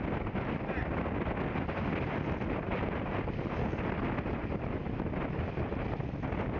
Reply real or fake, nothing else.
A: real